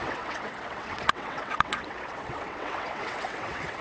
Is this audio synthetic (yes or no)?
yes